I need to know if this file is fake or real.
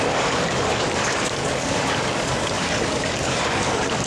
fake